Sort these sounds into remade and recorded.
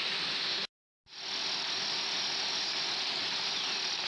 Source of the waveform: recorded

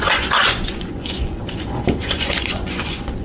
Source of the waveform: remade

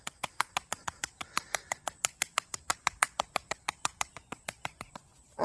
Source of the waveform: remade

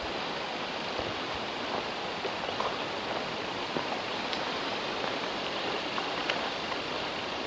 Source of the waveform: recorded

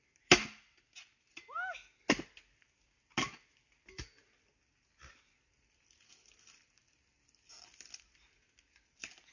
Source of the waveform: recorded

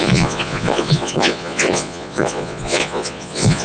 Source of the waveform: remade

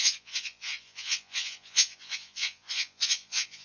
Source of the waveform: remade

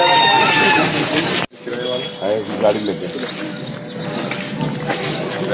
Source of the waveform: recorded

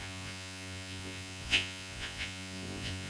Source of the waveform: remade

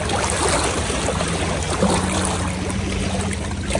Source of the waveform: recorded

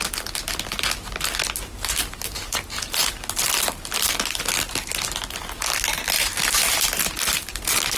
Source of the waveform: recorded